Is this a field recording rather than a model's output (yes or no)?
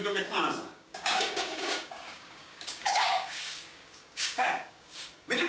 no